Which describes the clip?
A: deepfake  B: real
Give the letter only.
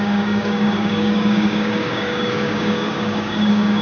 A